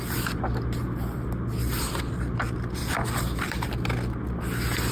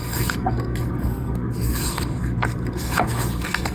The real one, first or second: first